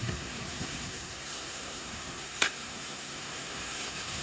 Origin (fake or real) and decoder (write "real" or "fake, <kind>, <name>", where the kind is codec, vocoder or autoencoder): fake, codec, SNAC